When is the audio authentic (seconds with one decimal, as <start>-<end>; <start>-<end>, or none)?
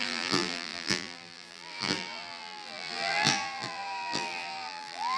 none